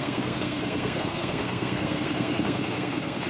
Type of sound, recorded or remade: remade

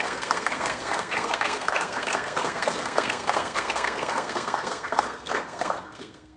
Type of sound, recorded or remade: remade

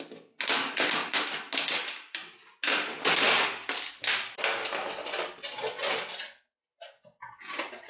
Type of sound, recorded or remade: recorded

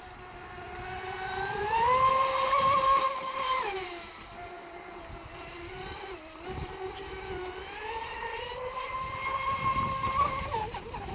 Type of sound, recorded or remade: remade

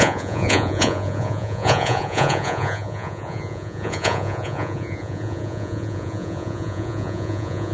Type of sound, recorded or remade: remade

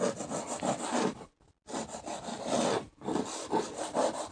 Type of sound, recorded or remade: recorded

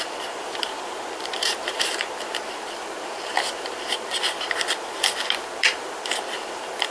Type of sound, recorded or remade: remade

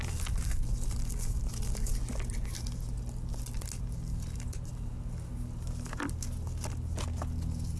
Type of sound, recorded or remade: recorded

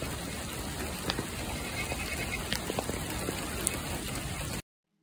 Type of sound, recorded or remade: recorded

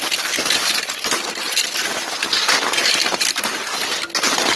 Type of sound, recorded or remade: recorded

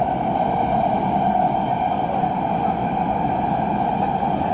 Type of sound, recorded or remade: recorded